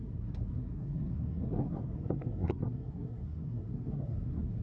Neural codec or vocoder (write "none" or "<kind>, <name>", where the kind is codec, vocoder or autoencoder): codec, SNAC